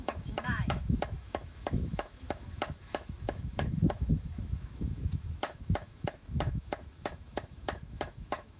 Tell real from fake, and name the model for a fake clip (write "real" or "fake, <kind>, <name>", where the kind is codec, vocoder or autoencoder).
fake, autoencoder, DAC-VAE